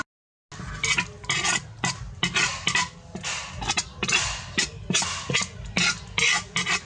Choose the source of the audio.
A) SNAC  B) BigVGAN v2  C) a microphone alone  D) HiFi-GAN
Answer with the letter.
C